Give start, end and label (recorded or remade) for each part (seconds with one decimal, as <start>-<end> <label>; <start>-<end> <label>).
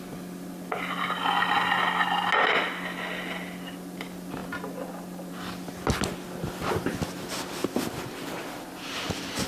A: 0.0-9.5 recorded